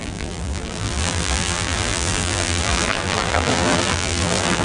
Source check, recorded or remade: remade